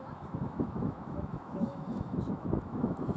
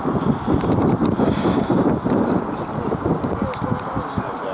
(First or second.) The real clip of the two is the second